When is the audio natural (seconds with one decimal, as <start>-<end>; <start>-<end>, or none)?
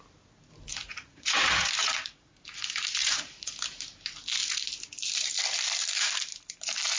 0.0-0.7; 2.3-3.0; 3.6-7.0